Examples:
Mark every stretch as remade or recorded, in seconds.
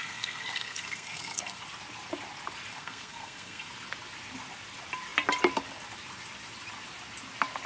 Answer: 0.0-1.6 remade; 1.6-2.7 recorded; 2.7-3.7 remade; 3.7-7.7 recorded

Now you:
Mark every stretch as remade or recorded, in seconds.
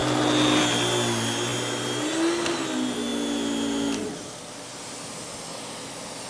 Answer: 0.0-6.3 recorded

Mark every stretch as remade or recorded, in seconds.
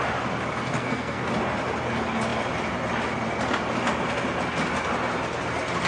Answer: 0.0-0.7 recorded; 0.7-1.3 remade; 1.3-5.9 recorded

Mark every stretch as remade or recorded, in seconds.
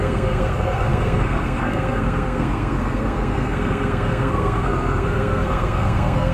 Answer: 0.0-6.3 remade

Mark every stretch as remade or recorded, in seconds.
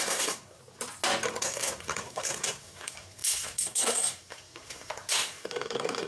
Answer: 0.0-0.6 remade; 0.6-1.4 recorded; 1.4-6.1 remade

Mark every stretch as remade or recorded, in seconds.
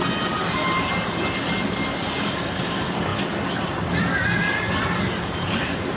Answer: 0.0-6.0 recorded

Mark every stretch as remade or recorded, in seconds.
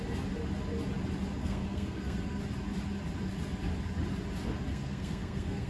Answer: 0.0-1.4 recorded; 1.4-2.4 remade; 2.4-4.7 recorded; 4.7-5.7 remade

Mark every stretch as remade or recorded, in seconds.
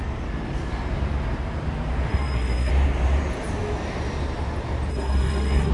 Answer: 0.0-2.1 recorded; 2.1-2.7 remade; 2.7-4.9 recorded; 4.9-5.7 remade